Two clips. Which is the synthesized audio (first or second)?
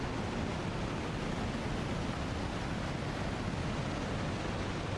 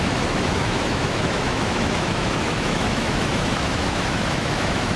second